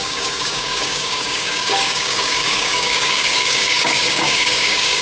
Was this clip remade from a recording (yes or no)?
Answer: yes